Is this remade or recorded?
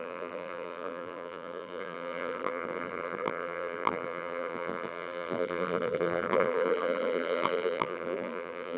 remade